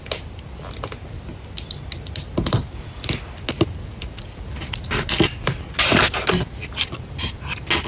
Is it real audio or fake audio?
real